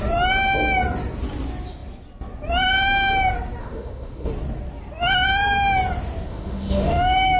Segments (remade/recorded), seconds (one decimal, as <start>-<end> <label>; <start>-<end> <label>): 0.0-3.6 recorded; 3.6-4.3 remade; 4.3-6.3 recorded; 6.3-7.4 remade